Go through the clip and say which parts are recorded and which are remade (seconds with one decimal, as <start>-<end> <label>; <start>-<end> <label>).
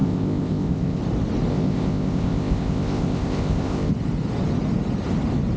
0.0-1.0 remade; 1.0-1.5 recorded; 1.5-3.9 remade; 3.9-5.6 recorded